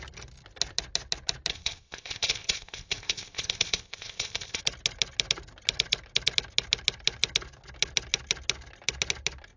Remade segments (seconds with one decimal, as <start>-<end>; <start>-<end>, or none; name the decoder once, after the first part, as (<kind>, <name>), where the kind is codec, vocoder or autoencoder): 1.5-4.6 (codec, ZipCodec)